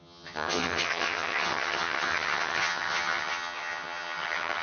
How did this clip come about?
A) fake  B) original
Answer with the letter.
A